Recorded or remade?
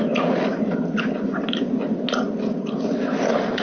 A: recorded